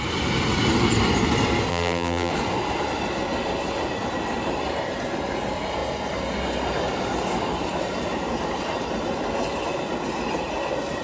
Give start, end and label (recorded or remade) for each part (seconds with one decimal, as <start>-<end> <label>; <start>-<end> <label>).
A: 0.0-1.7 recorded; 1.7-2.3 remade; 2.3-11.0 recorded